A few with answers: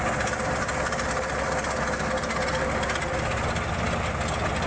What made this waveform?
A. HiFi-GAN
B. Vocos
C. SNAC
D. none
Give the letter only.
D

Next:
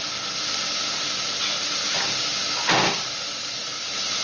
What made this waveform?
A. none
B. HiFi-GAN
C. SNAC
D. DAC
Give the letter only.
A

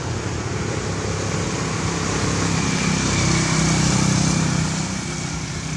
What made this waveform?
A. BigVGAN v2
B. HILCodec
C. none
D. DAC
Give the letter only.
C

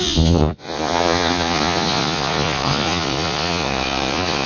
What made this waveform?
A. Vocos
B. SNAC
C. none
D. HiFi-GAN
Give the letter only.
A